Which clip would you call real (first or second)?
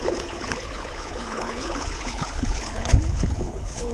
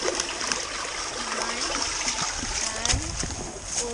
second